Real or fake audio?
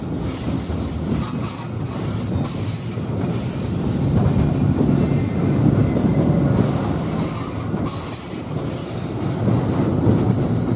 real